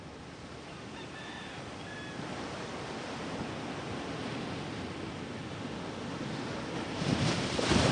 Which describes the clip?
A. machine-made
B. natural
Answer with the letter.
B